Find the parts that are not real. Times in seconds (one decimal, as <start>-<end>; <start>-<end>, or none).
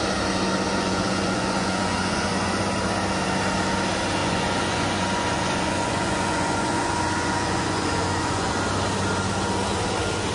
0.7-2.6; 4.2-8.5